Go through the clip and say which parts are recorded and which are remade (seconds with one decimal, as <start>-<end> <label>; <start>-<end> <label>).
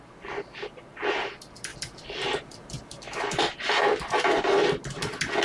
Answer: 0.0-1.7 recorded; 1.7-3.4 remade; 3.4-5.4 recorded